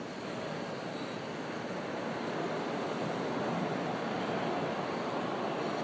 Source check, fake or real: real